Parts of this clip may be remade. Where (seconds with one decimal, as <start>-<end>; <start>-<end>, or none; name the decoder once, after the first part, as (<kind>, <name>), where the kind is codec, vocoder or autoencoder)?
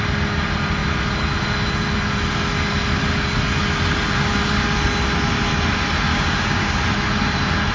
6.1-6.8 (codec, DAC)